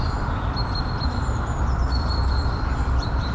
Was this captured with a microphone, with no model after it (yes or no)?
no